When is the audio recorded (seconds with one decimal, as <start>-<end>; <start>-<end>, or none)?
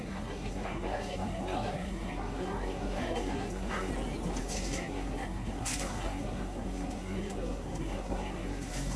3.9-4.4